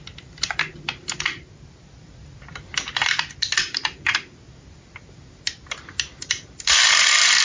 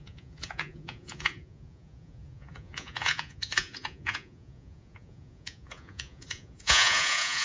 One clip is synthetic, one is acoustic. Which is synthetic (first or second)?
second